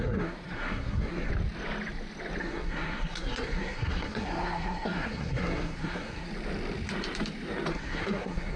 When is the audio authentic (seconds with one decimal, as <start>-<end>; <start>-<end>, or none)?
1.3-2.4; 6.3-7.7